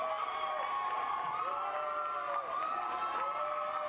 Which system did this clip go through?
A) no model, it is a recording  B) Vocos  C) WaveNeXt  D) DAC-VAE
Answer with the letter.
A